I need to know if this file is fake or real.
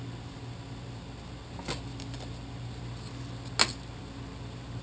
real